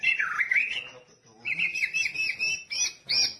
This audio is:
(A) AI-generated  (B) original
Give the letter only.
B